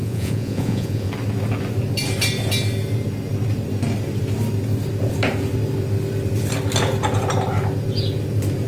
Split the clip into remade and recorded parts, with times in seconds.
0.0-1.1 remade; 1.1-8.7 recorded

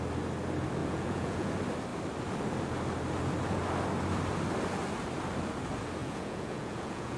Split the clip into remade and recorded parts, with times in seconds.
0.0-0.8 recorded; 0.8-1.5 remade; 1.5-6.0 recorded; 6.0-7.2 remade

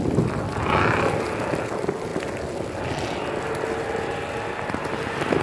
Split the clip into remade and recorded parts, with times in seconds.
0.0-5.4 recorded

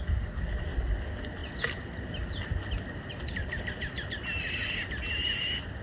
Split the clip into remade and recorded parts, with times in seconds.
0.0-5.8 recorded

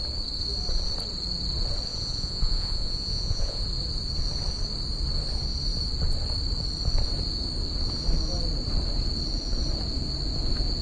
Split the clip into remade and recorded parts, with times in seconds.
0.0-1.9 recorded; 1.9-3.6 remade; 3.6-10.8 recorded

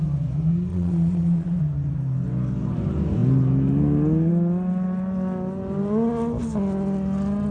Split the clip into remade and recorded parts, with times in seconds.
0.0-0.7 recorded; 0.7-1.6 remade; 1.6-7.5 recorded